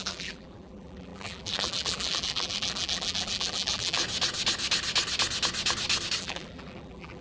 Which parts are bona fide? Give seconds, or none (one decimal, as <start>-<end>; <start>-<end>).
4.0-6.2